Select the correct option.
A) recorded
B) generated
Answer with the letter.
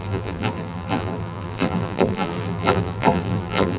B